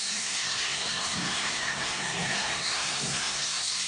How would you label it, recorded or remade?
remade